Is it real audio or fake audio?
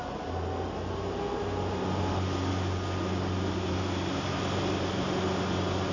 real